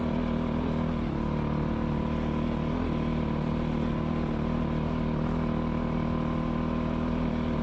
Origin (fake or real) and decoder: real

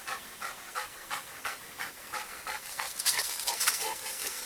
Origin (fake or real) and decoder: fake, codec, SNAC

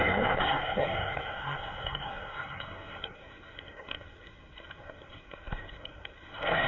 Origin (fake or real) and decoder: fake, codec, SNAC